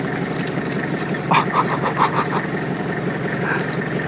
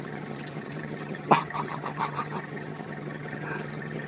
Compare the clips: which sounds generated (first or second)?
second